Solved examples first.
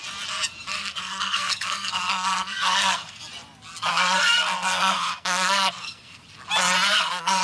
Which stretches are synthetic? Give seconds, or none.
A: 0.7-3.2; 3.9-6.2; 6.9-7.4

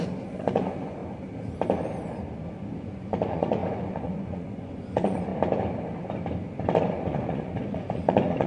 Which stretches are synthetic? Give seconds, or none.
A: 0.0-1.0; 2.5-5.3; 6.8-8.5